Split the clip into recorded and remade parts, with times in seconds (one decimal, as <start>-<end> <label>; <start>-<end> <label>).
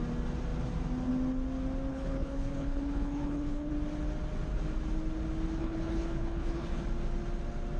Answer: 0.0-1.9 recorded; 1.9-3.7 remade; 3.7-5.6 recorded; 5.6-6.8 remade; 6.8-7.8 recorded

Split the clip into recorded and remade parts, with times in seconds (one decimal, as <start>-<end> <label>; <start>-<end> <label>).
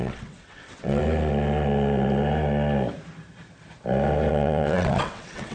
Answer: 0.0-1.0 remade; 1.0-4.3 recorded; 4.3-5.5 remade